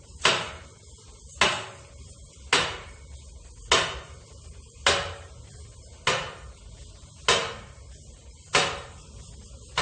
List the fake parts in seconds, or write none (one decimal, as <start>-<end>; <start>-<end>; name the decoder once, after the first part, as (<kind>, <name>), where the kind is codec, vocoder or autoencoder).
none